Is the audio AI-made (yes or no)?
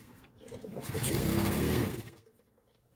yes